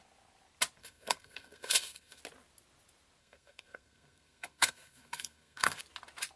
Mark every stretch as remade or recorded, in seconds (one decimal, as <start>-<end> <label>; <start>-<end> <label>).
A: 0.0-0.8 recorded; 0.8-2.2 remade; 2.2-3.2 recorded; 3.2-5.8 remade; 5.8-6.4 recorded